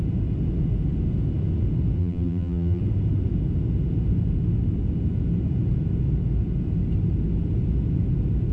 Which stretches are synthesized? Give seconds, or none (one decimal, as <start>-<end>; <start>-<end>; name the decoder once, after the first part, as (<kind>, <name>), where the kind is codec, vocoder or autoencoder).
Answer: 2.0-2.8 (vocoder, BigVGAN v2)